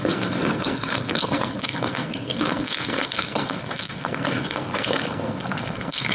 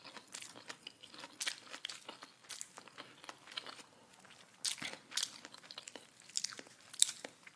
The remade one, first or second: first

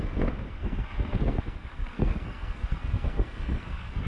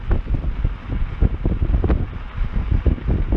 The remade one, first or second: first